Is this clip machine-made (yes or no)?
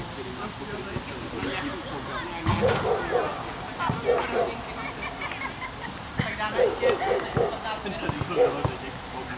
no